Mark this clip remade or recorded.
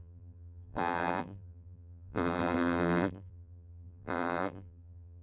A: remade